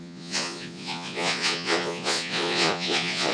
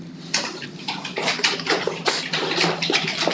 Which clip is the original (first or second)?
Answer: second